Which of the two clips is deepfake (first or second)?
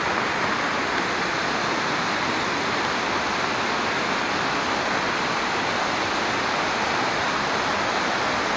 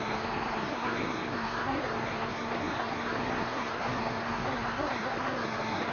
second